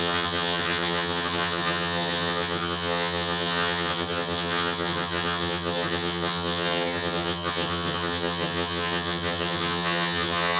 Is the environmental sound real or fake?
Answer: fake